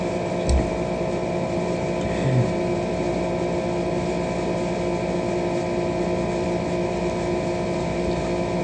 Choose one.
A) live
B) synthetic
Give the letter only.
A